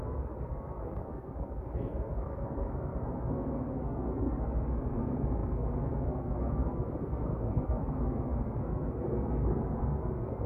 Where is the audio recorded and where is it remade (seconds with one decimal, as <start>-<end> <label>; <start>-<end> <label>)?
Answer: 0.0-10.5 remade